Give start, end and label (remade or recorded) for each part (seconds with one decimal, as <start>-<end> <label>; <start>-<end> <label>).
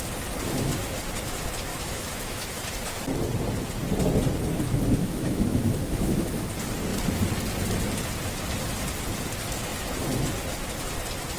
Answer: 0.0-1.7 recorded; 1.7-2.6 remade; 2.6-5.0 recorded; 5.0-6.5 remade; 6.5-11.4 recorded